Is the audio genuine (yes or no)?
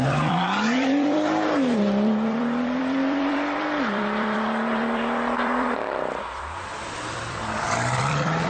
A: no